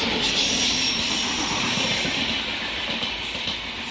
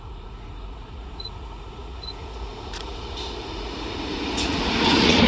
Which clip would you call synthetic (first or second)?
second